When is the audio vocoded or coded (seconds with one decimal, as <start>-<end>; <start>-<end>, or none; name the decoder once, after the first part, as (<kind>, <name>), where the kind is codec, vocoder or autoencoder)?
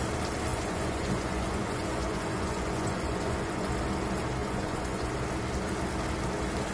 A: 0.5-3.7 (vocoder, Vocos); 4.4-5.1